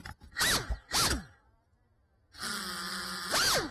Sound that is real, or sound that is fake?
real